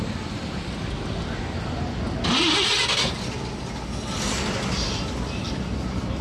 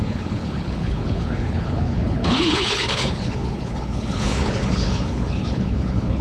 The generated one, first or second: second